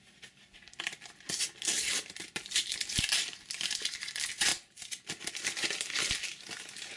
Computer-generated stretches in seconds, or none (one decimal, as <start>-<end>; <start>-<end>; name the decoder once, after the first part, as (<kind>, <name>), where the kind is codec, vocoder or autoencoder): 0.0-7.0 (vocoder, BigVGAN v2)